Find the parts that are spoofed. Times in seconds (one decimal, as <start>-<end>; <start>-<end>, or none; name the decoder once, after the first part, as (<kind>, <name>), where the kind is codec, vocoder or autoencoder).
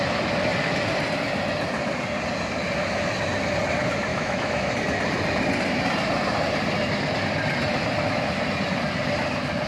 4.1-4.7 (autoencoder, DAC-VAE)